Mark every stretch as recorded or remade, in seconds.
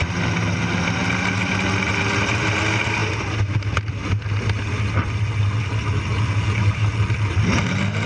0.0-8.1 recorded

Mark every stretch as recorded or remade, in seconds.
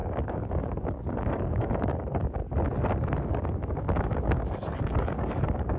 0.0-2.4 remade; 2.4-3.3 recorded; 3.3-5.8 remade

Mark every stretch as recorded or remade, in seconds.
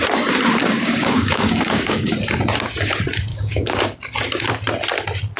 0.0-0.6 recorded; 0.6-2.1 remade; 2.1-3.3 recorded; 3.3-3.8 remade; 3.8-5.4 recorded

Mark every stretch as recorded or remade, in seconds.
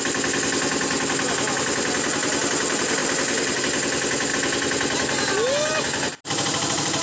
0.0-7.0 recorded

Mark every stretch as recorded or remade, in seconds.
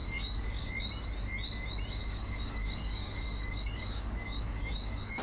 0.0-0.7 remade; 0.7-2.0 recorded; 2.0-5.2 remade